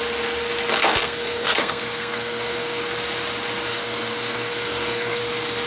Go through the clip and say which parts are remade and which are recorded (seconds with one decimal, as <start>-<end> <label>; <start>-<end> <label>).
0.0-0.9 recorded; 0.9-2.8 remade; 2.8-3.7 recorded; 3.7-5.2 remade; 5.2-5.7 recorded